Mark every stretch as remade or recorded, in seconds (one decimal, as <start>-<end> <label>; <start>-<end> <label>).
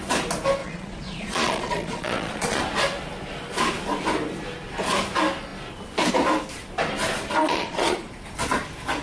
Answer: 0.0-0.6 recorded; 0.6-2.6 remade; 2.6-7.4 recorded; 7.4-8.1 remade; 8.1-9.0 recorded